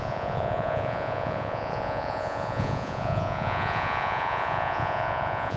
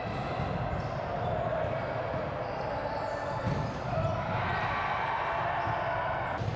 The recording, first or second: second